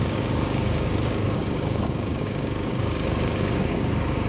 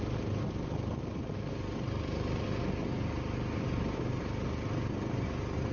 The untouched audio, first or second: second